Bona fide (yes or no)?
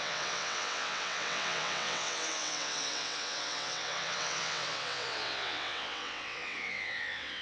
no